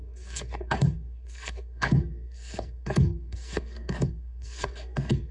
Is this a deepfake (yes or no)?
yes